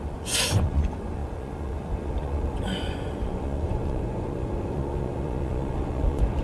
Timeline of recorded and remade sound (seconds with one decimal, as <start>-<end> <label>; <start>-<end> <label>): 0.0-6.4 remade